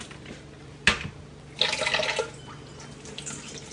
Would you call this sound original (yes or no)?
yes